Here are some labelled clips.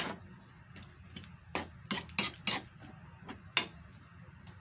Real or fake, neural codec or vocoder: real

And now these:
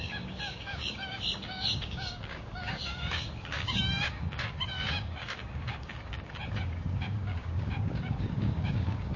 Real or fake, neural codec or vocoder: fake, codec, DAC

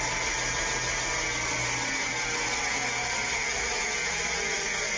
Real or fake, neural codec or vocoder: real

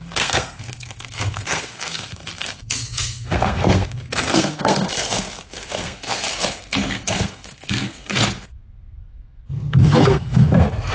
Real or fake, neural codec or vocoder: fake, codec, SNAC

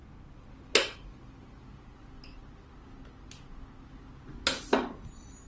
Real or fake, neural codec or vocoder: real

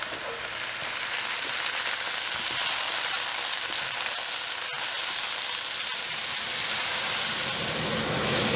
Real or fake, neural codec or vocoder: real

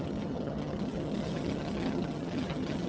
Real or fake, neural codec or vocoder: fake, vocoder, HiFi-GAN